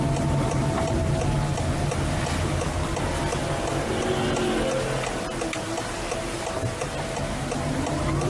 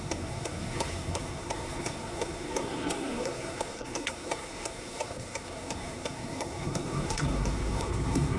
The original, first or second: first